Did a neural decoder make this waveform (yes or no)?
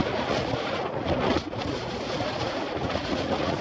yes